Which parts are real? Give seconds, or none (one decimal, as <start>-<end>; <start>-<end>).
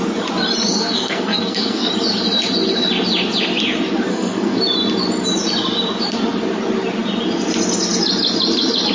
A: 0.0-0.7; 1.9-4.1; 4.6-8.9